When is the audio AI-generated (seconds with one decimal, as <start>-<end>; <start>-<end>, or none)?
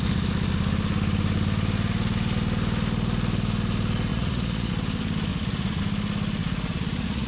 4.1-4.7; 5.3-5.8; 6.4-7.3